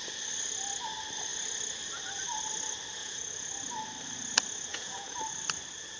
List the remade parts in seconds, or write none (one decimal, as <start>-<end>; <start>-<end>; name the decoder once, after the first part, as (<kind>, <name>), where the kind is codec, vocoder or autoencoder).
3.0-3.5 (vocoder, Vocos); 4.7-5.2